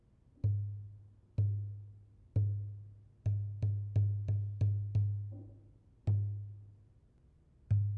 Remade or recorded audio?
recorded